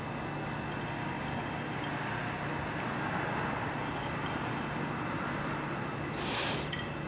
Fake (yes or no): no